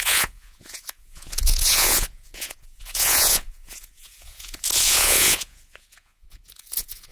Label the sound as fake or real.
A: fake